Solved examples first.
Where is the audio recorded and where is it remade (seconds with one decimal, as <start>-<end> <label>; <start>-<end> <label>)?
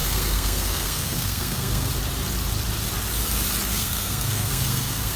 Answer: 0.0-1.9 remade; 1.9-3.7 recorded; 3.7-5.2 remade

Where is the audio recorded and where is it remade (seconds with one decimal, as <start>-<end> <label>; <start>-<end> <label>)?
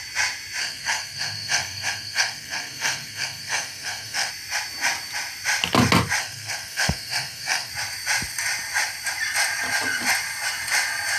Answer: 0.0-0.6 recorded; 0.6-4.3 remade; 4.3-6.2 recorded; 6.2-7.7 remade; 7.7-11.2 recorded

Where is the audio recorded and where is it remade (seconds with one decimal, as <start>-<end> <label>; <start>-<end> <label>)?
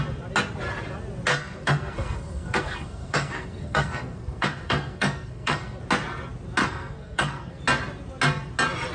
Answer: 0.0-1.3 recorded; 1.3-5.8 remade; 5.8-6.6 recorded; 6.6-7.6 remade; 7.6-8.9 recorded